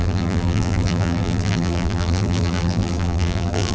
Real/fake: fake